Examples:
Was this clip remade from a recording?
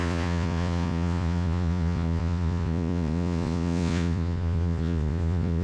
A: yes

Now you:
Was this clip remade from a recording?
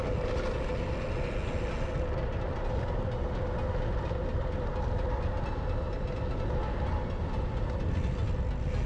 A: no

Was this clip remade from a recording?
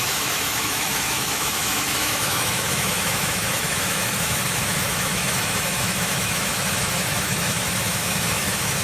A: yes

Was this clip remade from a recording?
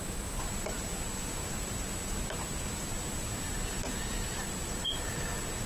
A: no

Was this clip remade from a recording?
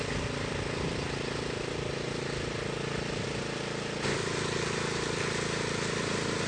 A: no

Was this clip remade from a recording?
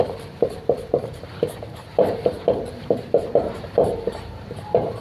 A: yes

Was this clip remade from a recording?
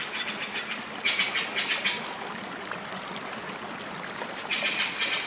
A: no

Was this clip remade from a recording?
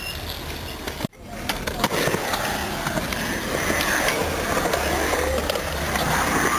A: no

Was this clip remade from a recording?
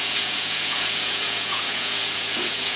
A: yes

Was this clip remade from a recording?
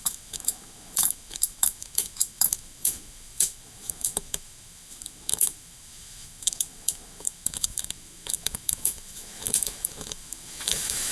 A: yes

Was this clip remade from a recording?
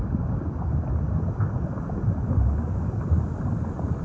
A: no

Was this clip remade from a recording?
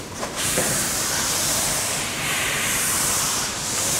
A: yes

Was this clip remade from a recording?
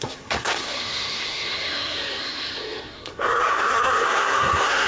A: yes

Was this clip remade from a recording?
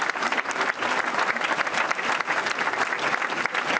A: no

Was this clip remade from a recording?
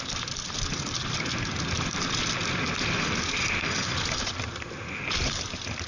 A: no